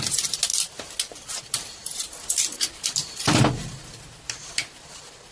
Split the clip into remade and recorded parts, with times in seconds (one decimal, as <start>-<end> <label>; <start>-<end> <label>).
0.0-5.3 recorded